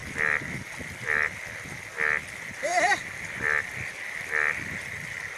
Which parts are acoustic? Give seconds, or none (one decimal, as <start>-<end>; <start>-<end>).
1.8-2.7